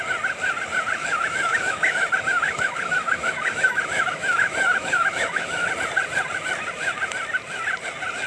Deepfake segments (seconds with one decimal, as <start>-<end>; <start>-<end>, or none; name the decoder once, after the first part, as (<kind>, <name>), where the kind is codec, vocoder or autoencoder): 1.0-5.7 (autoencoder, DAC-VAE)